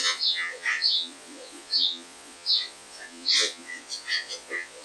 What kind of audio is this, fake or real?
fake